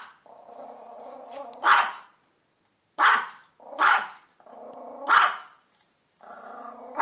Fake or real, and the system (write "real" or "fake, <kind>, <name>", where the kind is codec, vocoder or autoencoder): real